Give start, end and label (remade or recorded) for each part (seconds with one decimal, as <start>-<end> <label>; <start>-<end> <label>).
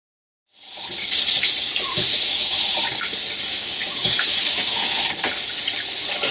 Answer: 0.0-2.1 recorded; 2.1-2.7 remade; 2.7-3.5 recorded; 3.5-5.0 remade; 5.0-6.3 recorded